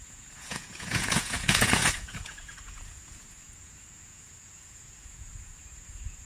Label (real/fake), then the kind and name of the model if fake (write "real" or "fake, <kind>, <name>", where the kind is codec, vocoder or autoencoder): fake, vocoder, Vocos